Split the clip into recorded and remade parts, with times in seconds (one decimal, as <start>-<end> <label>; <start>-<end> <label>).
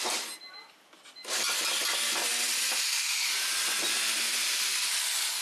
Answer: 0.0-5.4 recorded